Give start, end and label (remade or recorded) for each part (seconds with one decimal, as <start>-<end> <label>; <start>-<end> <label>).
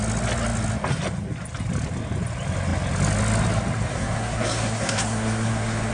0.0-3.9 recorded; 3.9-5.9 remade